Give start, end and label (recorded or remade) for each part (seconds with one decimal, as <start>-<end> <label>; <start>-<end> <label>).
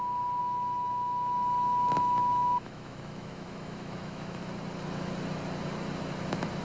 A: 0.0-0.4 recorded; 0.4-4.4 remade; 4.4-6.6 recorded